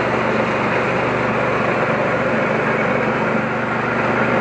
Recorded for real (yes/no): yes